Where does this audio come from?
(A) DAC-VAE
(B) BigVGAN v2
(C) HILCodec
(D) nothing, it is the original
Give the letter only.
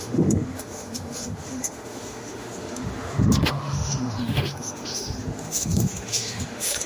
A